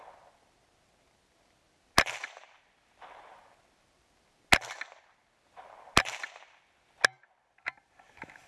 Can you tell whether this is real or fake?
real